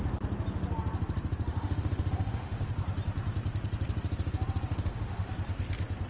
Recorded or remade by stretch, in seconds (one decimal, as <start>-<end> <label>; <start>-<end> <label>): 0.0-1.5 recorded; 1.5-2.7 remade; 2.7-4.7 recorded; 4.7-5.3 remade; 5.3-6.1 recorded